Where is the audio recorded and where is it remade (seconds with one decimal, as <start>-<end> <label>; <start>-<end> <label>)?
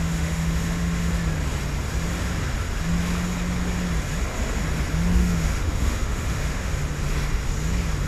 0.0-1.1 remade; 1.1-5.1 recorded; 5.1-6.7 remade; 6.7-8.1 recorded